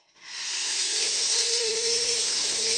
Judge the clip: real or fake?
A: fake